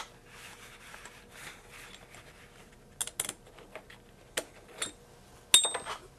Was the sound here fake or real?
real